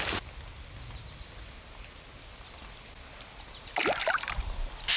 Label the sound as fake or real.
real